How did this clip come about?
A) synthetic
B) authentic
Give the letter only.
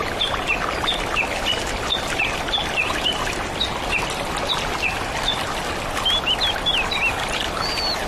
B